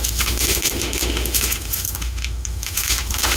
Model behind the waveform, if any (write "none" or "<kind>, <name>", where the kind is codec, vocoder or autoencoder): autoencoder, DAC-VAE